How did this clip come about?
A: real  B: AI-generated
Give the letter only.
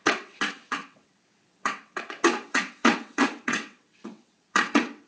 B